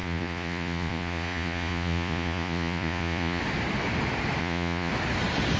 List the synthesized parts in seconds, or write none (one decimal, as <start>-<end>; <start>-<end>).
0.0-3.4; 4.4-4.9